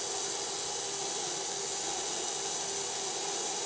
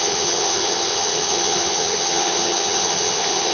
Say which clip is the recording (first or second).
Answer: first